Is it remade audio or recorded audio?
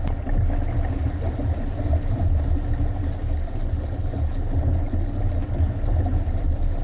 recorded